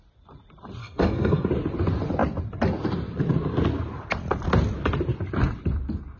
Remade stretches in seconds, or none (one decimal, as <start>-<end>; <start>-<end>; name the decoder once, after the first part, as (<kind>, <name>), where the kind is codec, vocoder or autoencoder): 0.8-1.5 (codec, SNAC)